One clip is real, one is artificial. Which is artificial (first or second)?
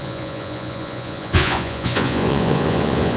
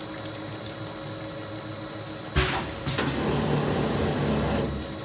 first